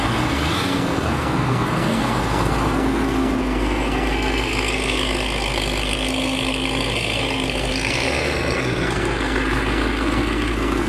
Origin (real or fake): fake